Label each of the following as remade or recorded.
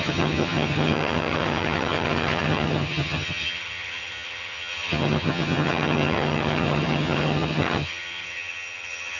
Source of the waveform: remade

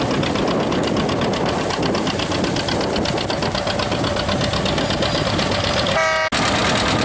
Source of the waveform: recorded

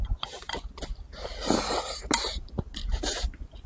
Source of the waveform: recorded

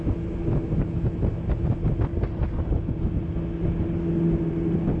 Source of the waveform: recorded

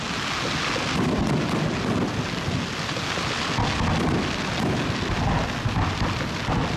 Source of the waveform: recorded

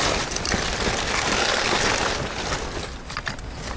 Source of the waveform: recorded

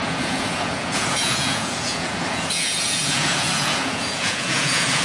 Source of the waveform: remade